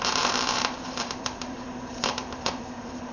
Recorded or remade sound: remade